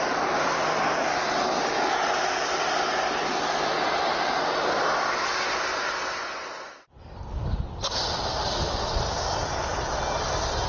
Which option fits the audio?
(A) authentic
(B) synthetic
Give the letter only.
A